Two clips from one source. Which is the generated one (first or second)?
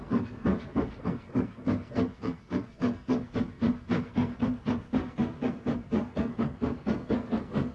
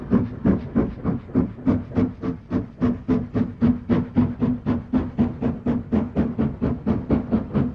first